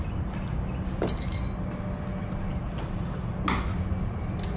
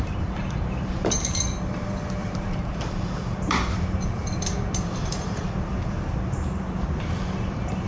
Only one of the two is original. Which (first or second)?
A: first